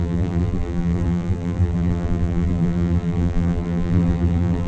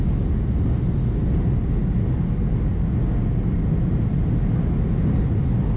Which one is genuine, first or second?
second